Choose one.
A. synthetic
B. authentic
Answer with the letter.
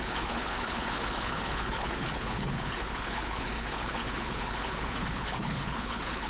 A